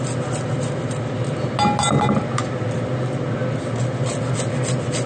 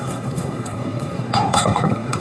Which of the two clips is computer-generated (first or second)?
second